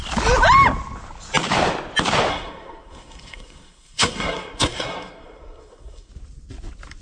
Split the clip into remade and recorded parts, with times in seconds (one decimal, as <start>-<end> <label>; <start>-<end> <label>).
0.0-2.3 recorded; 2.3-6.1 remade; 6.1-7.0 recorded